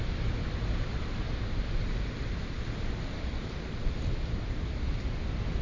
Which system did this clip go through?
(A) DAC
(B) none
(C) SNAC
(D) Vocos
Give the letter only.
B